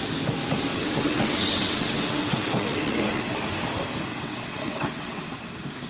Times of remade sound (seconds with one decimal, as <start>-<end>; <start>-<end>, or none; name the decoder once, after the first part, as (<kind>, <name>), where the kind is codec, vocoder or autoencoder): 0.7-3.4 (vocoder, WaveNeXt); 4.1-5.3